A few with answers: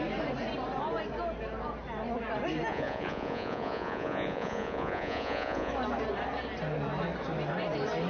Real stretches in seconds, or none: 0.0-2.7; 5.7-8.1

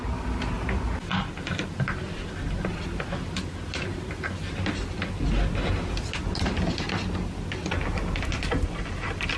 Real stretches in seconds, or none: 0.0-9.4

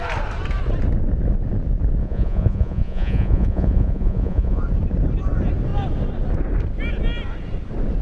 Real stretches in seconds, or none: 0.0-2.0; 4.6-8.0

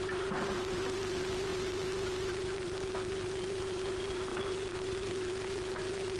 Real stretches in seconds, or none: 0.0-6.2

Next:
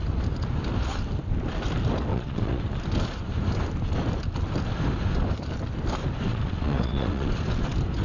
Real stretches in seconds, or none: 0.0-2.1; 2.6-6.3; 7.3-8.0

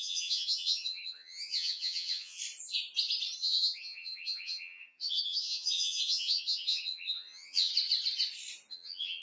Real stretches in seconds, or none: 2.4-3.4; 7.7-8.7